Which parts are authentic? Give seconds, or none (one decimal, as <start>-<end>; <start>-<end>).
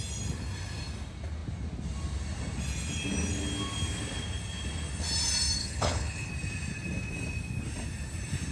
0.0-5.6; 6.3-8.5